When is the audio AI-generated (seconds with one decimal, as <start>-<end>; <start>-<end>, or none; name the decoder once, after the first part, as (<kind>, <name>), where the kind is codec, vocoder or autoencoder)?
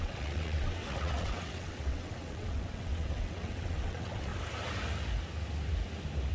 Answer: 0.0-4.3 (vocoder, WaveNeXt)